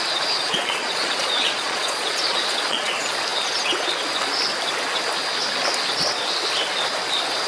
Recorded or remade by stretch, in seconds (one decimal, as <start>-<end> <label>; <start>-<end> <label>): 0.0-0.6 recorded; 0.6-2.9 remade; 2.9-7.5 recorded